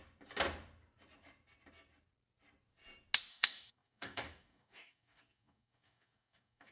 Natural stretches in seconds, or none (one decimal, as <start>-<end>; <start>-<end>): 0.0-3.3